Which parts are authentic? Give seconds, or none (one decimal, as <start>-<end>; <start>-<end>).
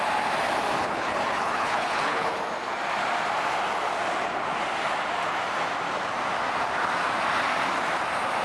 0.0-0.8; 2.3-8.4